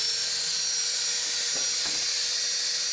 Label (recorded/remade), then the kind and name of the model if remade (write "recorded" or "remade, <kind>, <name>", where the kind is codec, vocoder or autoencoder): recorded